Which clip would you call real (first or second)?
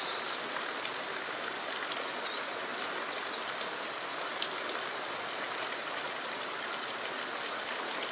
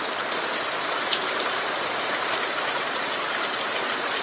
first